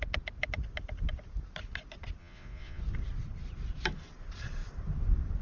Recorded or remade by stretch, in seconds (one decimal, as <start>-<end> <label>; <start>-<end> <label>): 0.0-2.2 recorded; 2.2-2.8 remade; 2.8-5.4 recorded